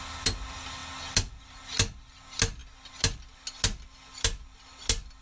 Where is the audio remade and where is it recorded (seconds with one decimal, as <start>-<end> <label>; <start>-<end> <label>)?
0.0-5.2 recorded